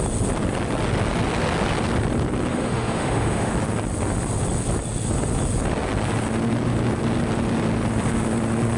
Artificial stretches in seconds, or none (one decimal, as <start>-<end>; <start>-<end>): 2.5-3.5